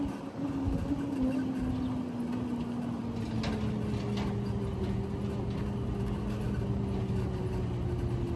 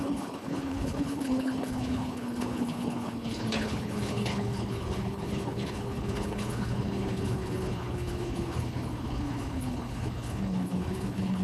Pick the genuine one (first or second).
first